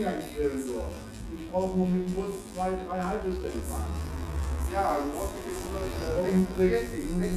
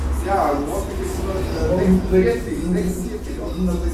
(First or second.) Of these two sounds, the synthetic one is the first